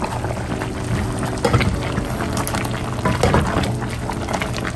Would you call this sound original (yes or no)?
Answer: yes